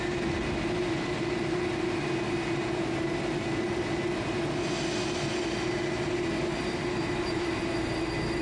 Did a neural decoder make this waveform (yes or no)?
no